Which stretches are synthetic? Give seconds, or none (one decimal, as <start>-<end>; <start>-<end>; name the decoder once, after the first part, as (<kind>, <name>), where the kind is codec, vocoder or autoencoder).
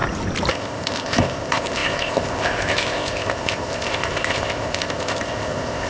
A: 0.5-5.9 (codec, ZipCodec)